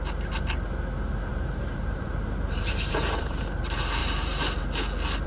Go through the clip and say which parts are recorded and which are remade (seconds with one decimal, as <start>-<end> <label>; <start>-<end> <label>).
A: 0.0-1.3 recorded; 1.3-3.4 remade; 3.4-4.0 recorded; 4.0-4.6 remade; 4.6-5.3 recorded